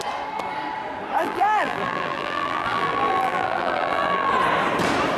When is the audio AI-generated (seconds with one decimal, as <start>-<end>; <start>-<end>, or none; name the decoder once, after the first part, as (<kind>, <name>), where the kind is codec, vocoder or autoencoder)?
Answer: 1.2-4.3 (vocoder, BigVGAN v2)